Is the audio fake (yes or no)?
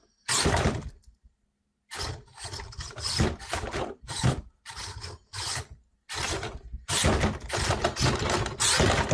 no